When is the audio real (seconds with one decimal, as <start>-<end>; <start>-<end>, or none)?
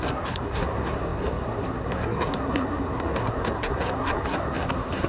none